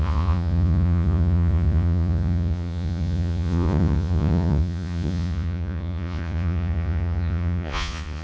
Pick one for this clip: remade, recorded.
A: remade